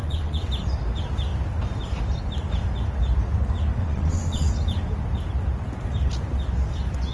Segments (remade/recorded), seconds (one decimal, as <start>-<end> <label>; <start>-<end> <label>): 0.0-0.5 remade; 0.5-3.8 recorded; 3.8-4.5 remade; 4.5-7.1 recorded